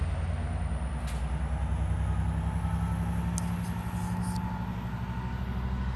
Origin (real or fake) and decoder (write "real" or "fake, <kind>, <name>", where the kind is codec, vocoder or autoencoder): real